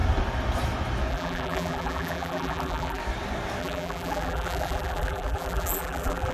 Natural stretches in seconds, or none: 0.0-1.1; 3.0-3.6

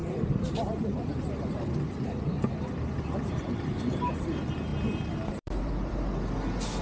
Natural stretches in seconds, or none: 4.1-4.7; 5.9-6.8

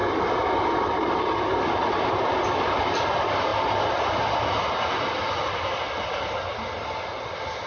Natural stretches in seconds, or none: 0.0-7.7

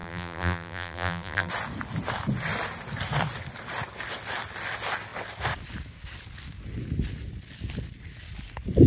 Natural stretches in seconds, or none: 1.5-8.9